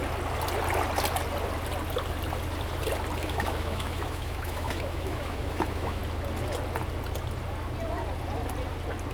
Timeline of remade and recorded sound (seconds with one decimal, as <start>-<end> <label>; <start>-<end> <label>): 0.0-3.2 recorded; 3.2-6.0 remade; 6.0-9.1 recorded